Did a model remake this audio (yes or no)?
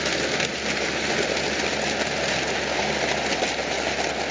no